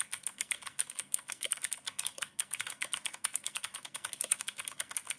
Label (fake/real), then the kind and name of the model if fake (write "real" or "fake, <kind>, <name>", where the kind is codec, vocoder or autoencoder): fake, codec, SNAC